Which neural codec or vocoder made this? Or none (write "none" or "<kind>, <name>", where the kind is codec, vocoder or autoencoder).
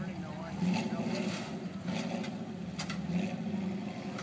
none